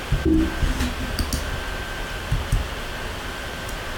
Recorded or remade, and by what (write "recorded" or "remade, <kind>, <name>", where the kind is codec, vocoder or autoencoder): recorded